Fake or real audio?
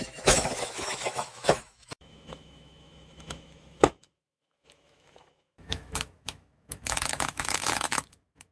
fake